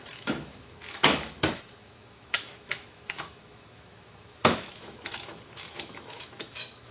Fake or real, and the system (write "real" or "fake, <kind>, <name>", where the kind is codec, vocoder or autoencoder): fake, autoencoder, DAC-VAE